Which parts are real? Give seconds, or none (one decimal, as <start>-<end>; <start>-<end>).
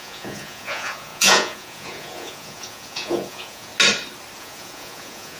3.7-4.4